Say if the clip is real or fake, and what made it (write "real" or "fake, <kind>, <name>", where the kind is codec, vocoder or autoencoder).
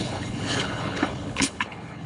fake, codec, HILCodec